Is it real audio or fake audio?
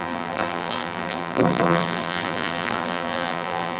fake